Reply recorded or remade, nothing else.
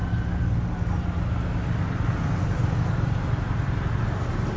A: recorded